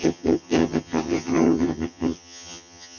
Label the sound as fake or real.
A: fake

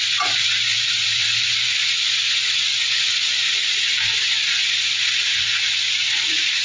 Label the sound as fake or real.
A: fake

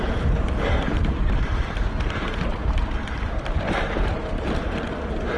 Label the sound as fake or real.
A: fake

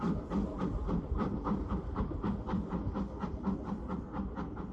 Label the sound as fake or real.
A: fake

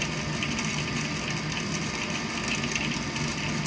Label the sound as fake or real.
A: real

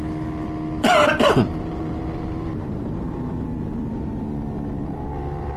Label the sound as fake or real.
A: fake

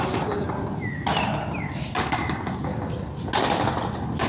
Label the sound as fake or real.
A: real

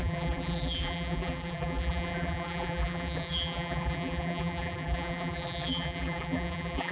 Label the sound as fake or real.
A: fake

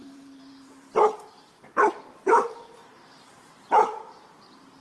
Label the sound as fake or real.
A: fake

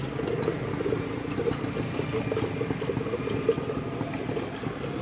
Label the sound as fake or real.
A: real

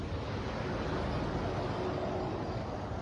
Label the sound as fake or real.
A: real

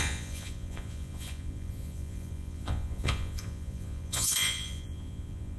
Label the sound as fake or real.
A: fake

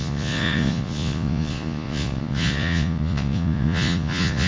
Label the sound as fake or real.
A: fake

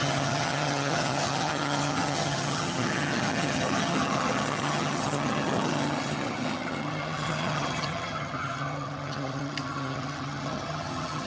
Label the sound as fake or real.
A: fake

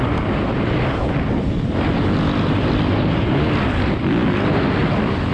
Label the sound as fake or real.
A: real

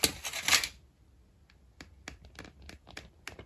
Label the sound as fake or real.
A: real